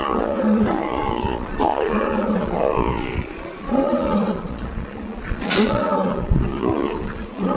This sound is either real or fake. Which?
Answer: fake